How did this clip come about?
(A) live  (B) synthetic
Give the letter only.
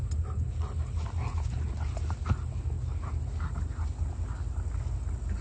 A